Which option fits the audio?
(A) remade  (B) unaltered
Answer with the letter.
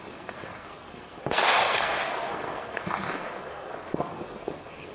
A